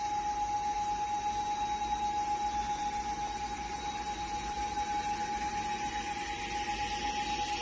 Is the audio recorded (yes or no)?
yes